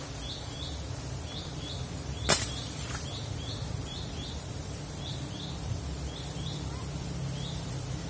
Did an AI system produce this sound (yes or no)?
yes